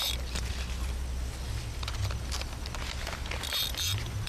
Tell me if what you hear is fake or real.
real